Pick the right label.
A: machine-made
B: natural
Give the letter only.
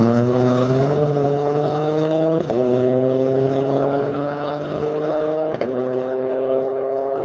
A